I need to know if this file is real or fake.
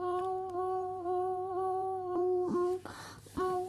fake